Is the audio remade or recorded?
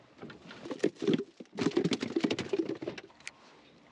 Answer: recorded